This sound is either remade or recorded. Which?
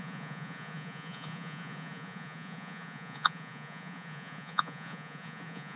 remade